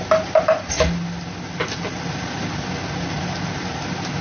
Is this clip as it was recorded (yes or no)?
yes